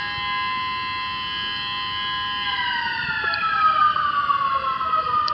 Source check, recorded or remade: recorded